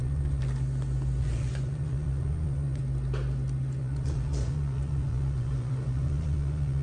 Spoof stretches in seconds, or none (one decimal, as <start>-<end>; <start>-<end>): 0.0-0.4; 1.2-2.8; 3.8-6.8